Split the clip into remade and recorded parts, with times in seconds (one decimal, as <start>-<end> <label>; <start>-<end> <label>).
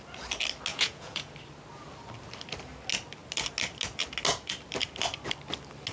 0.0-0.7 recorded; 0.7-1.3 remade; 1.3-5.9 recorded